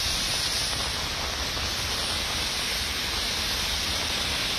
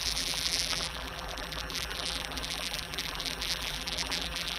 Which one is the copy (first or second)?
second